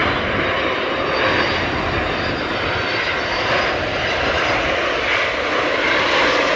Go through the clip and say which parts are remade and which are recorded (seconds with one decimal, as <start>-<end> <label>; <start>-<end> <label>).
0.0-6.6 recorded